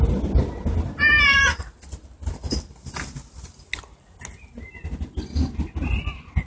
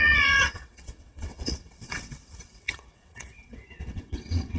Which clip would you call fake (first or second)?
second